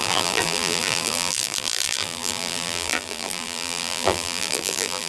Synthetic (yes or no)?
yes